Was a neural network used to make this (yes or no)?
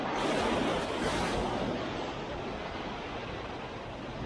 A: no